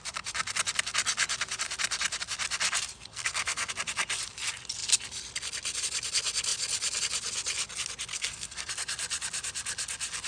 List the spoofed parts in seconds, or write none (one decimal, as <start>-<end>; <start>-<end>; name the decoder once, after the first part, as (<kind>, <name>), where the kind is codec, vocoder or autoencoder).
3.1-3.7 (codec, SNAC); 8.1-8.7